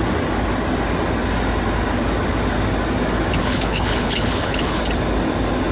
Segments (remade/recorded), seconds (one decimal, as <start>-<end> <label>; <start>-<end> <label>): 0.0-3.4 recorded; 3.4-4.8 remade; 4.8-5.7 recorded